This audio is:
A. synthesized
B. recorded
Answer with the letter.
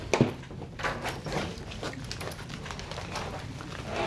B